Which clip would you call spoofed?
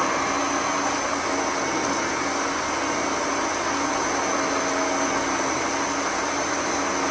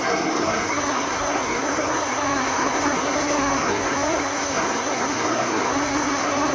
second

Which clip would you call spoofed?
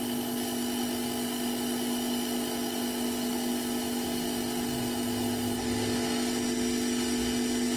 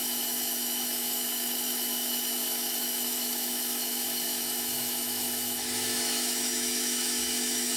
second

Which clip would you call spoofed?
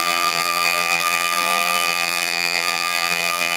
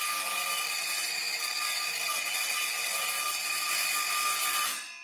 first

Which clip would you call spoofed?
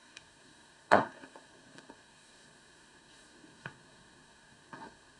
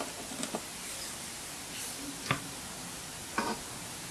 first